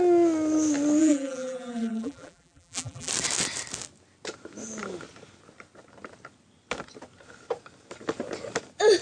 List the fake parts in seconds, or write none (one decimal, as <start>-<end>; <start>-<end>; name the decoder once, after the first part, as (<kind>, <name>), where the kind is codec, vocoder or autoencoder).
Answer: 1.0-3.1 (vocoder, BigVGAN v2)

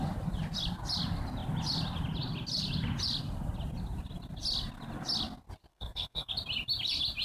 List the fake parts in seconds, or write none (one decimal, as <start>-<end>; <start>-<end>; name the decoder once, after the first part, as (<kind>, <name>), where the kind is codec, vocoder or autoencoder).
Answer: 5.7-6.3 (codec, SNAC)

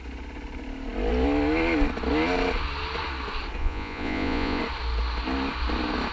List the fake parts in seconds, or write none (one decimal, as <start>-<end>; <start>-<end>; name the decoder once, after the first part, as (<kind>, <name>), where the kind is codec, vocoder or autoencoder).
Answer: 3.6-4.6 (vocoder, Vocos)